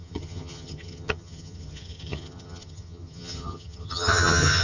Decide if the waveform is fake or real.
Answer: fake